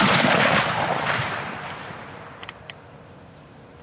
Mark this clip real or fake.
fake